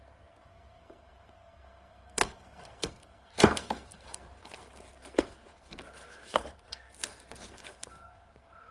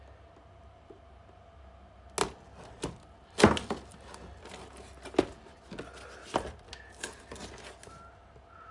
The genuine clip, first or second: second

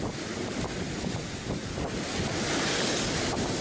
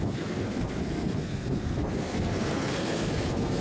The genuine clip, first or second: first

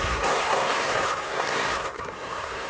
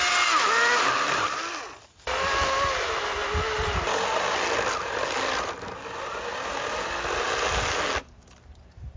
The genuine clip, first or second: second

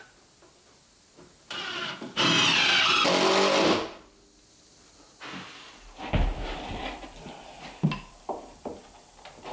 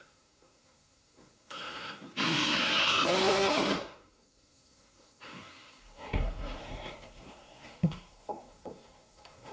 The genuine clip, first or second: first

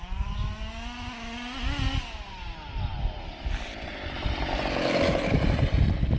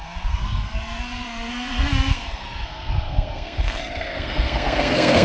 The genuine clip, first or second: first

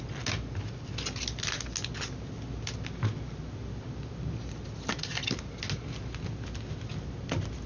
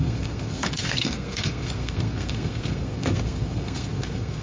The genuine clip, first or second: first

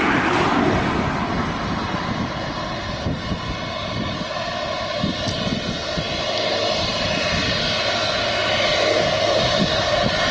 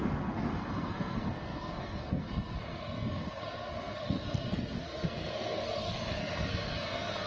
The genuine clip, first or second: first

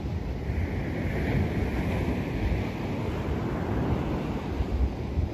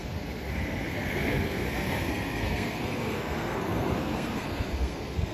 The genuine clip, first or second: first